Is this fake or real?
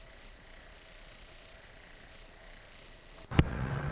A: fake